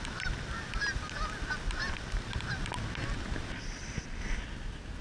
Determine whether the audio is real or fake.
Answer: real